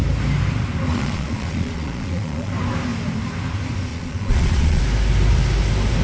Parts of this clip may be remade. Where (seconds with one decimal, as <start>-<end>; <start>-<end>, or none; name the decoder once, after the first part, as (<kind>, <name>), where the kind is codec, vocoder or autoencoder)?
0.9-2.5 (vocoder, Vocos); 3.9-4.8